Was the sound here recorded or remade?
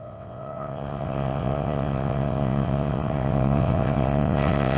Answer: remade